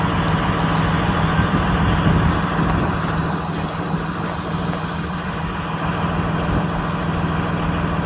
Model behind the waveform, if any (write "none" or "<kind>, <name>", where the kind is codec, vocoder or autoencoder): none